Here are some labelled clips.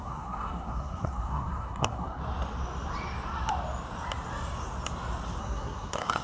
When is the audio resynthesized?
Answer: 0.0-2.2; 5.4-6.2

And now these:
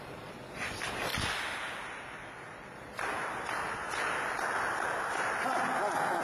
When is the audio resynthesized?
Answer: none

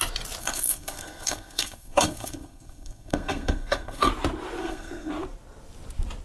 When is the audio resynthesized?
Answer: 0.4-4.1; 4.6-5.1

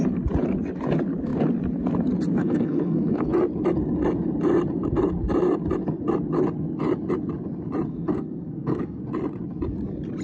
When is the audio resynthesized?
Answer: 2.4-3.3; 7.9-9.0